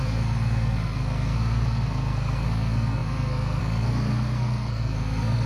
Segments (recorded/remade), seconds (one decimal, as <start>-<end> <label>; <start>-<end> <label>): 0.0-5.5 remade